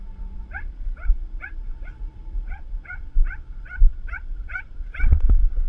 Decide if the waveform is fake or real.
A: fake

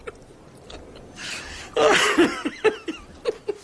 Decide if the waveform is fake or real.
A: real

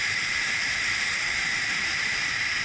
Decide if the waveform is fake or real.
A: fake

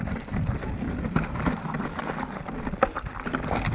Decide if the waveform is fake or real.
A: real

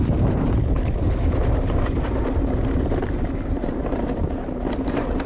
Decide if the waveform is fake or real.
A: fake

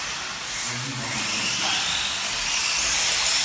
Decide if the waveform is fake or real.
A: real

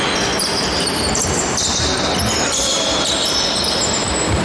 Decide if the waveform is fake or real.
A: real